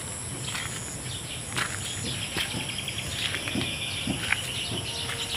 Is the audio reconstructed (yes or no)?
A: no